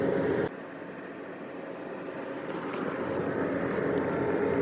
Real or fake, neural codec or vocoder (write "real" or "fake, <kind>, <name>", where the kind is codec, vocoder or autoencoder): real